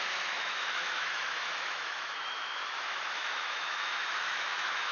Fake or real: fake